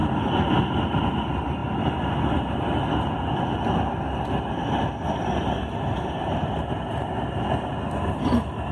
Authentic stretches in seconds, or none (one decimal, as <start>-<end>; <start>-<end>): 0.0-8.7